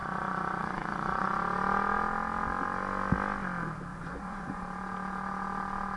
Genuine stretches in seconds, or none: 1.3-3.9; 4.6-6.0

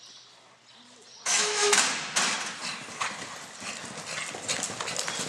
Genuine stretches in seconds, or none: 0.0-1.3; 1.8-5.3

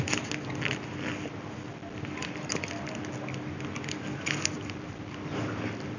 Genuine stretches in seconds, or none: 0.0-6.0

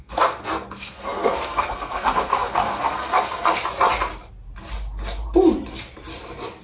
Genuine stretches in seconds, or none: 3.6-6.6

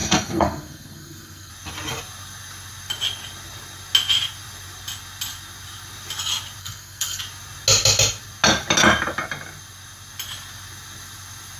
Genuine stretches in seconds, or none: 1.5-6.6; 7.2-11.6

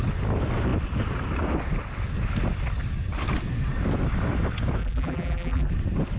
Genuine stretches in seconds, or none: 0.0-4.8; 5.7-6.2

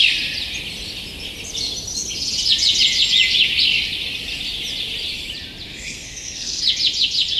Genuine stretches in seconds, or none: 0.0-5.7; 6.6-7.4